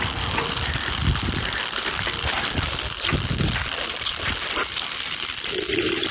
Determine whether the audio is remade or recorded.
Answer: remade